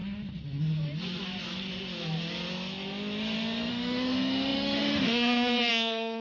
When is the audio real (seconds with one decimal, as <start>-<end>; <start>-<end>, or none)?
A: 0.0-3.7